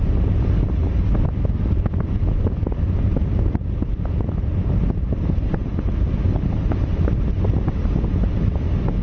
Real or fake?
real